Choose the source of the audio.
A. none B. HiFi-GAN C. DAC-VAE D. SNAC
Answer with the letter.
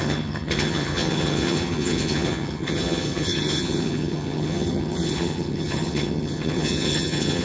B